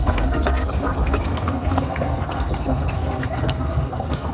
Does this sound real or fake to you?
fake